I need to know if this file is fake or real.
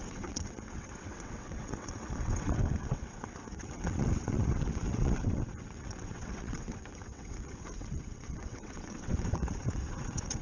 fake